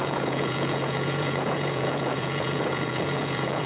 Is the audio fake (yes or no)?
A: yes